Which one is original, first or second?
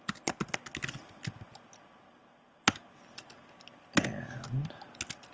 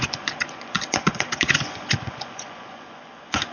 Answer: first